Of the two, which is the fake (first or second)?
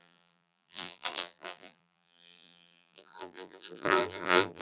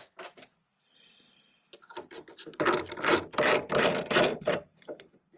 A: first